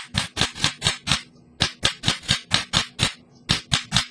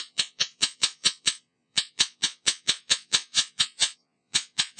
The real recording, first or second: first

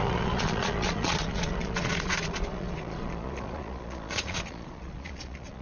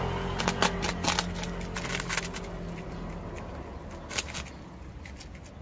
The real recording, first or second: second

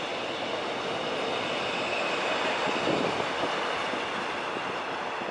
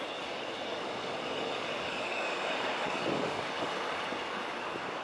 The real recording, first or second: first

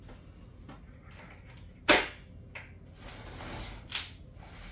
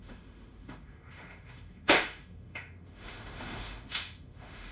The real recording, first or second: first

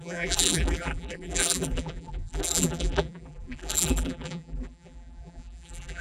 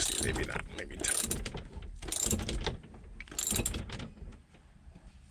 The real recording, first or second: second